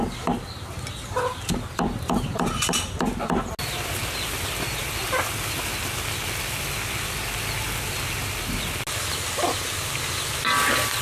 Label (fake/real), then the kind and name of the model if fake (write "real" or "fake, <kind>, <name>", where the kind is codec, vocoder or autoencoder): real